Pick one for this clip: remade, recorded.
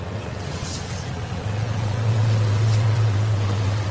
remade